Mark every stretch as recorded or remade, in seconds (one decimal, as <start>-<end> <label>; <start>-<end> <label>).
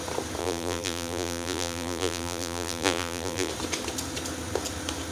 0.0-0.4 recorded; 0.4-3.5 remade; 3.5-5.1 recorded